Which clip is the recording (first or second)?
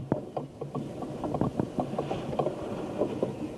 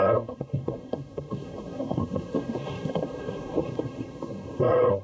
first